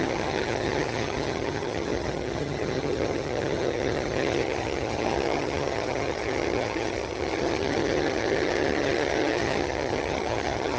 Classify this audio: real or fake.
fake